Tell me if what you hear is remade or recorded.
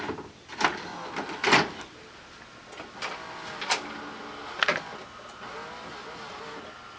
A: recorded